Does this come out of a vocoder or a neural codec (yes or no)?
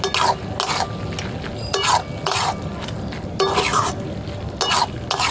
no